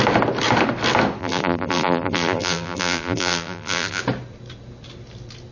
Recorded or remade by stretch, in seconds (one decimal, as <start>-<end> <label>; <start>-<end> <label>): 0.0-1.2 recorded; 1.2-4.0 remade; 4.0-5.5 recorded